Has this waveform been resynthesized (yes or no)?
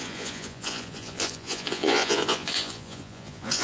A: yes